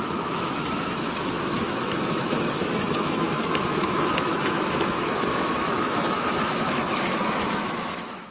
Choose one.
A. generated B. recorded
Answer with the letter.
A